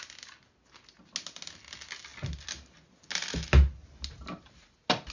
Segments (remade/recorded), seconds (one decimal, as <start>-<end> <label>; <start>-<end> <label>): 0.0-5.1 recorded